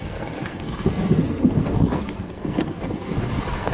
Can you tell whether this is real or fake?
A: fake